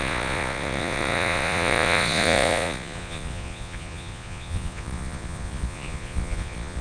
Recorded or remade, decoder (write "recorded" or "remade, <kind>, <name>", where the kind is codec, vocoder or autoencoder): remade, vocoder, Vocos